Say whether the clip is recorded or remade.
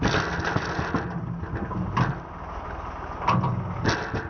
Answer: recorded